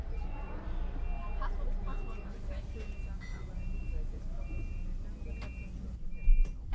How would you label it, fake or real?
real